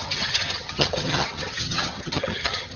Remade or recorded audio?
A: remade